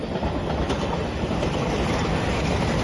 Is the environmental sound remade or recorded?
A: remade